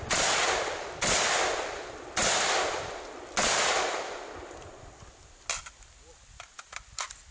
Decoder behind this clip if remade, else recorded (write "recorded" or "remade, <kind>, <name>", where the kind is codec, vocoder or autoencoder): recorded